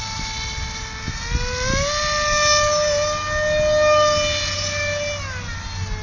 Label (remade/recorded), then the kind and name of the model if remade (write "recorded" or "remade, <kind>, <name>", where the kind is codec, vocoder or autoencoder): recorded